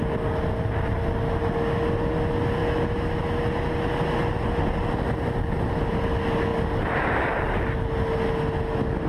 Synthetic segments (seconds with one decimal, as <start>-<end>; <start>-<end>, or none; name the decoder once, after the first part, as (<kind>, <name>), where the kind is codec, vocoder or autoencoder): 2.6-3.2 (autoencoder, DAC-VAE)

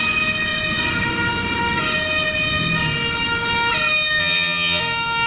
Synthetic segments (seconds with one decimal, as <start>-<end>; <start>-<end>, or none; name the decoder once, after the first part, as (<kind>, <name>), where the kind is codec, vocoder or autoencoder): 4.2-4.8 (vocoder, HiFi-GAN)

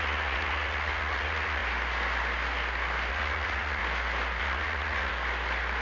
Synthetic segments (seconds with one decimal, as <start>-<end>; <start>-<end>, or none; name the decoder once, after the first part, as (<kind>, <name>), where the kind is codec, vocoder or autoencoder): 0.0-1.6 (vocoder, Vocos); 3.1-3.8; 4.4-5.1

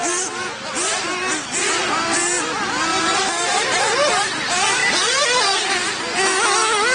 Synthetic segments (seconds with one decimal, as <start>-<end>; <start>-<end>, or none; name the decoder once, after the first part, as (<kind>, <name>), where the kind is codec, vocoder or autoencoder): 1.3-1.8 (vocoder, BigVGAN v2); 2.9-3.8

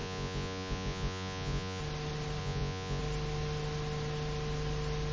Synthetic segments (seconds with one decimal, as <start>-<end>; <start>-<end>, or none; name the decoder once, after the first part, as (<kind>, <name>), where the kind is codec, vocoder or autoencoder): 0.0-1.8 (vocoder, Vocos); 2.4-3.0

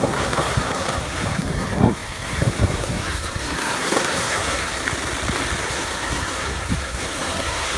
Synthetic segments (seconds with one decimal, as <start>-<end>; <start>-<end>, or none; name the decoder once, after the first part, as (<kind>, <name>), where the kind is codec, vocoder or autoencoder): 0.0-4.8 (codec, SNAC); 5.6-7.8